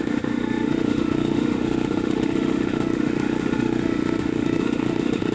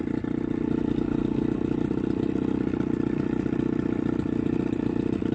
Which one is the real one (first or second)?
second